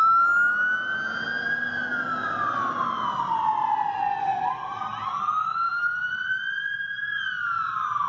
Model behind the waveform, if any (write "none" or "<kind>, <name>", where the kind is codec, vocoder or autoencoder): none